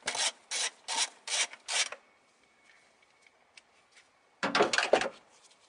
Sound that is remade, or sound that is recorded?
recorded